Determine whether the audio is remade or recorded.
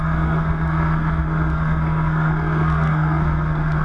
remade